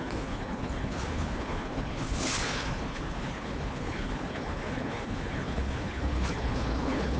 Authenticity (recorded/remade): remade